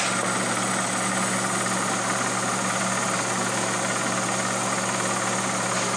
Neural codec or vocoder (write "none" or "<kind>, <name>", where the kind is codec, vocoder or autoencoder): none